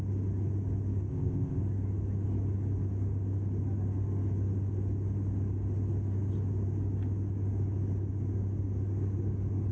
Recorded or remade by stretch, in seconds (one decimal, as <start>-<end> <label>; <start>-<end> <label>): 0.0-1.1 recorded; 1.1-1.6 remade; 1.6-9.7 recorded